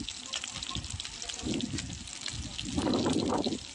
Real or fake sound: real